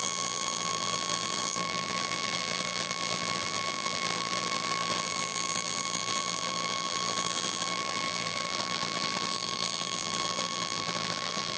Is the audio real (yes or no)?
no